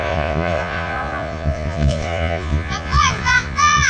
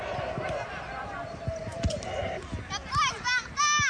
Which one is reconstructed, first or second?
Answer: first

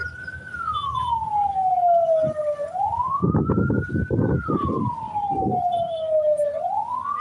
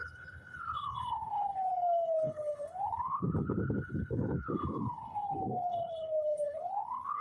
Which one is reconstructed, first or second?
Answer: second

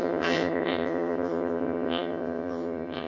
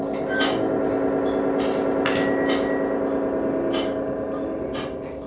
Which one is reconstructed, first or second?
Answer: first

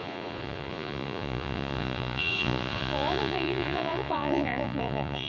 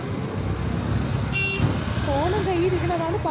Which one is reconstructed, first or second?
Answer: first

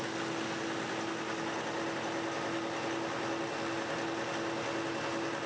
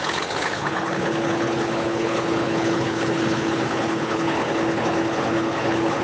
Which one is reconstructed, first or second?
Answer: second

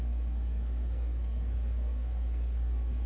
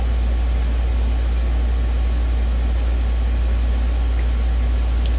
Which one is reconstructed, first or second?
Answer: first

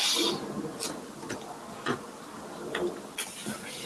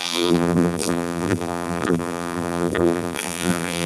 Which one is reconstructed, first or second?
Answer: second